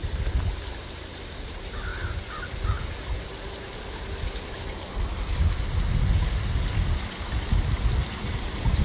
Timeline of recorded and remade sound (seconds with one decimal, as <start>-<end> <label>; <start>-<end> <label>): 0.0-8.8 recorded